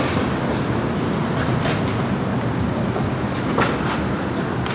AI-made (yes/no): no